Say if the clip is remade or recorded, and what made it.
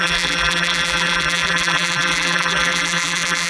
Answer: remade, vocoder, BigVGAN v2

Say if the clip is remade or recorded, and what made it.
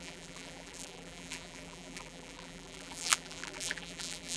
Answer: remade, vocoder, BigVGAN v2